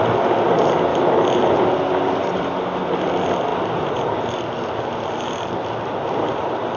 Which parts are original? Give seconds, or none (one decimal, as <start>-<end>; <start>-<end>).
0.0-6.8